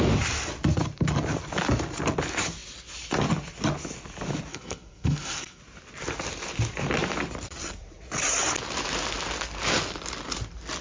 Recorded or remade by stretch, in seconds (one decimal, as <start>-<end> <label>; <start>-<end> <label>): 0.0-4.5 recorded; 4.5-5.6 remade; 5.6-10.8 recorded